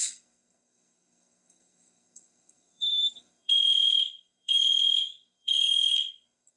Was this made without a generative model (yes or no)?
no